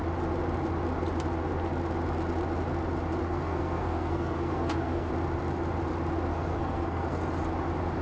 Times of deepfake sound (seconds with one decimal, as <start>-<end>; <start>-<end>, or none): 3.2-5.1; 6.3-7.2